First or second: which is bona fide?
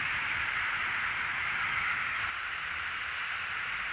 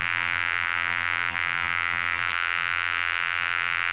first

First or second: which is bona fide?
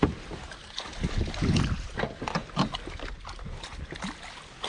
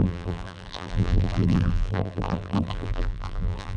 first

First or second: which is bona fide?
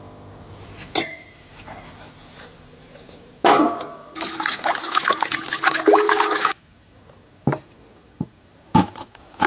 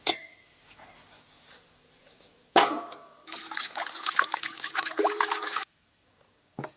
first